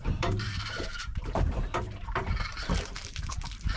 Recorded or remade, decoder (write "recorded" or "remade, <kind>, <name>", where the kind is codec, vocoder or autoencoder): remade, vocoder, BigVGAN v2